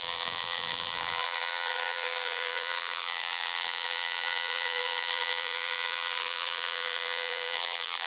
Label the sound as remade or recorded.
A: remade